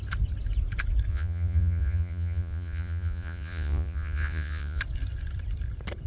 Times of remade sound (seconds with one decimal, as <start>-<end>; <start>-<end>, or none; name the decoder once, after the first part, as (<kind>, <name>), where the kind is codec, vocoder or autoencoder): 1.1-4.8 (vocoder, Vocos)

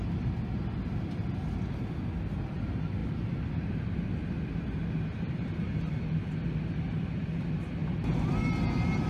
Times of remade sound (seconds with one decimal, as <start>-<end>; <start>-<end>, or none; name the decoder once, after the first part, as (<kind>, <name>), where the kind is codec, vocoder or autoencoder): none

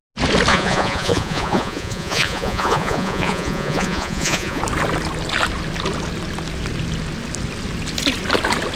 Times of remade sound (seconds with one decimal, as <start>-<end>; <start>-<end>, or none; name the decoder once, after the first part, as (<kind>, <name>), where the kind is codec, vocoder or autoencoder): 0.5-4.6 (vocoder, Vocos)

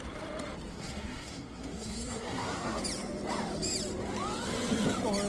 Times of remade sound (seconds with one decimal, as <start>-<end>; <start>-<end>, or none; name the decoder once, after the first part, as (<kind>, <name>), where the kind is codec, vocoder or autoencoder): 0.7-2.8 (codec, SNAC)

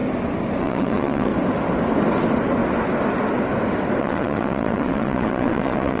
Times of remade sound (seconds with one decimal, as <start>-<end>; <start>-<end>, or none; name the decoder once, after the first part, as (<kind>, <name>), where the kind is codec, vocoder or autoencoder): 0.6-1.3 (vocoder, WaveNeXt); 4.0-6.0